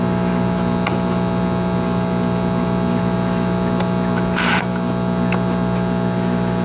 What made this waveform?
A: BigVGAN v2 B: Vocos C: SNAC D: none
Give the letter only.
D